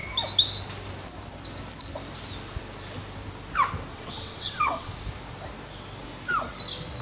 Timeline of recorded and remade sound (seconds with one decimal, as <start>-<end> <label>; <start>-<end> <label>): 0.0-3.9 recorded; 3.9-4.9 remade; 4.9-7.0 recorded